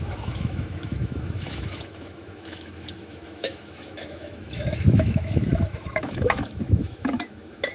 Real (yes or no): no